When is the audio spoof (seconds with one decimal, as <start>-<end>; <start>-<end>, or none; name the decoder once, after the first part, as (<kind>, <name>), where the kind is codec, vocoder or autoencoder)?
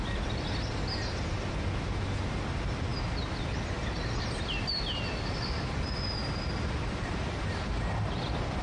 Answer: 2.9-3.7 (vocoder, BigVGAN v2); 6.2-8.6